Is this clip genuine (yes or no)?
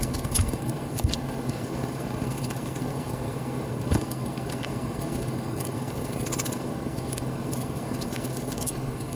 no